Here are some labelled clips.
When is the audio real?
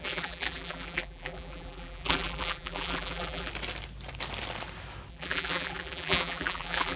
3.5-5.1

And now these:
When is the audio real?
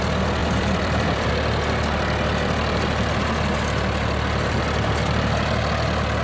0.0-0.4; 1.3-6.2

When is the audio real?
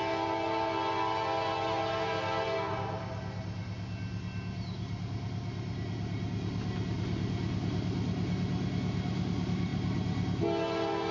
0.0-9.7; 10.4-11.1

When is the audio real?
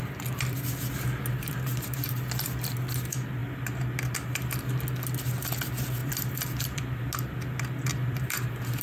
0.0-1.2; 2.1-6.0; 7.1-7.9